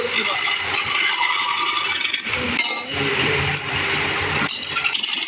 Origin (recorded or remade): remade